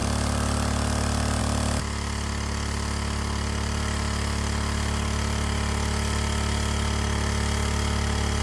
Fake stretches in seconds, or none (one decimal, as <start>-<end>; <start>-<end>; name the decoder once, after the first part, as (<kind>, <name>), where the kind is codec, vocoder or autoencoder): none